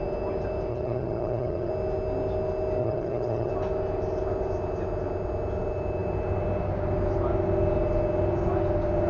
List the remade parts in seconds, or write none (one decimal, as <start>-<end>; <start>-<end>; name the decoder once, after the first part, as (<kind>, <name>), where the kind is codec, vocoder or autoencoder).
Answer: 0.7-1.7 (vocoder, HiFi-GAN); 2.8-3.5